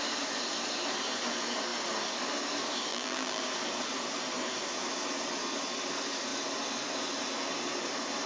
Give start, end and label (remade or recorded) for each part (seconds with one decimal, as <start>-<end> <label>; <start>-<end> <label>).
0.0-2.9 recorded; 2.9-3.4 remade; 3.4-8.3 recorded

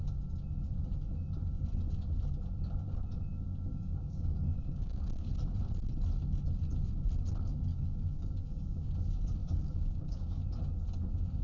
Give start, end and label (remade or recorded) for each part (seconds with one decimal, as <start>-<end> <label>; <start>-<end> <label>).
0.0-3.7 recorded; 3.7-5.3 remade; 5.3-7.7 recorded; 7.7-8.9 remade; 8.9-9.4 recorded; 9.4-10.4 remade; 10.4-11.4 recorded

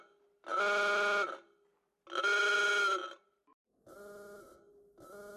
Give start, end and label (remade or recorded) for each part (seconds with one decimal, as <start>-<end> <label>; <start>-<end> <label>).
0.0-5.4 recorded